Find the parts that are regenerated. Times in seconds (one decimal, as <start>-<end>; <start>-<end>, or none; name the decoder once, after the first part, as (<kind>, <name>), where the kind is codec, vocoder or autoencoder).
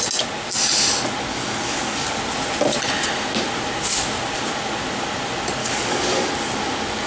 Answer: 1.3-2.2 (codec, DAC); 5.6-6.3